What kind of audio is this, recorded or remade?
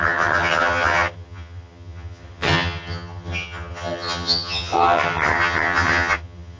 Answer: remade